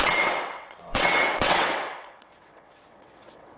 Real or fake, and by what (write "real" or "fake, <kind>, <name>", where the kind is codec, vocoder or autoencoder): fake, vocoder, WaveNeXt